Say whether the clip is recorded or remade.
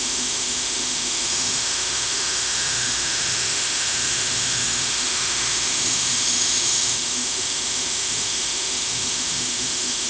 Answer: remade